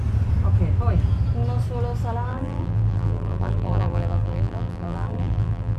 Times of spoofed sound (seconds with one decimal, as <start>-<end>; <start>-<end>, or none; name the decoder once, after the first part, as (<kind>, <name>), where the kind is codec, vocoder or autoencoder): 2.3-5.8 (vocoder, BigVGAN v2)